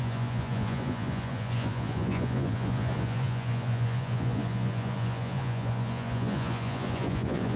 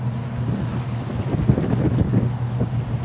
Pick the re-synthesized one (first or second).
first